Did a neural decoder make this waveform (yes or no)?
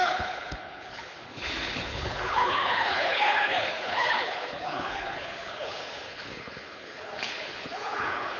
yes